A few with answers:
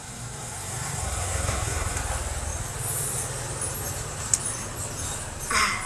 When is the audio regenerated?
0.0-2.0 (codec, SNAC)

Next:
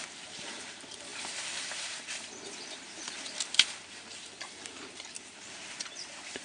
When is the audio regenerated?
0.0-6.4 (vocoder, BigVGAN v2)

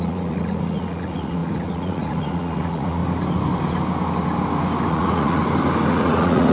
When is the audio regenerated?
0.0-3.0 (vocoder, Vocos); 4.9-5.4; 5.9-6.5

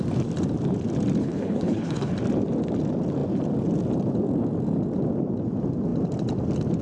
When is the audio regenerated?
1.2-2.1 (codec, HILCodec)